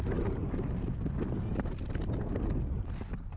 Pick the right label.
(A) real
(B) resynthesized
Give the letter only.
A